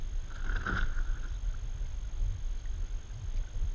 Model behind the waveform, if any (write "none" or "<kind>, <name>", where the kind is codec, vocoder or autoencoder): none